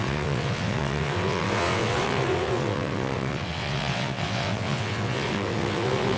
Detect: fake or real fake